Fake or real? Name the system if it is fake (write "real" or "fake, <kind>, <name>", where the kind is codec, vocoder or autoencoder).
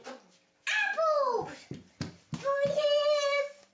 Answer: real